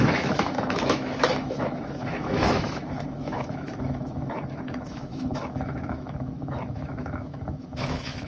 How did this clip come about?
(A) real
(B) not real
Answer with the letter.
B